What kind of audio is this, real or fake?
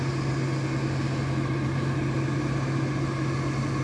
real